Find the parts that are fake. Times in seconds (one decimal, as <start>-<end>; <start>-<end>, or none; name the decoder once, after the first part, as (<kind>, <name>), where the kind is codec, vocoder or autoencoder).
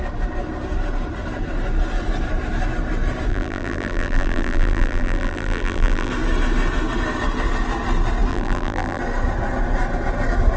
3.3-6.1 (vocoder, BigVGAN v2); 8.3-9.0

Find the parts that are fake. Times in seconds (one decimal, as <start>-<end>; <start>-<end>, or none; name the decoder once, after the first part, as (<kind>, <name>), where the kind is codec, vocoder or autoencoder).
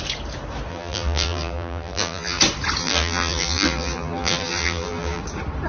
0.7-2.4 (vocoder, BigVGAN v2); 2.8-5.2